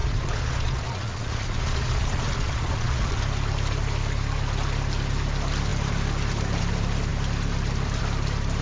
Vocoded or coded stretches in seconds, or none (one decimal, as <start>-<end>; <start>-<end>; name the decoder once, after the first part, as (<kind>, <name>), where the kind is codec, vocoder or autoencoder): 0.0-3.2 (vocoder, Vocos)